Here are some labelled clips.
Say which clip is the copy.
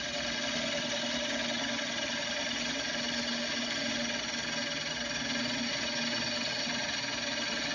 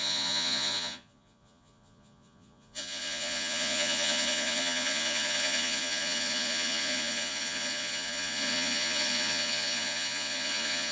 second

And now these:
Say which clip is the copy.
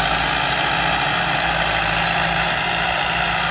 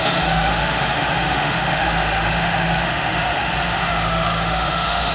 second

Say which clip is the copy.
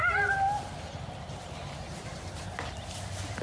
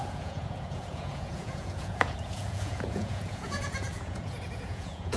second